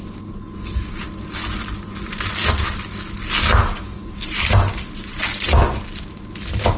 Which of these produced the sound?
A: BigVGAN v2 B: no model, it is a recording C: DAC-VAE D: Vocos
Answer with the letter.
B